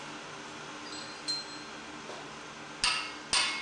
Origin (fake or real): real